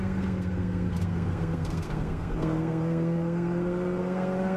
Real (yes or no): no